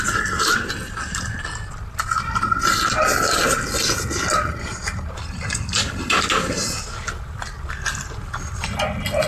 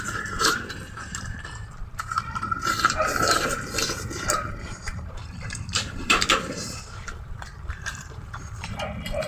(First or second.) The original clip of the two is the first